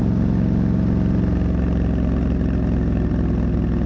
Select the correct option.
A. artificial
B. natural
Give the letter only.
B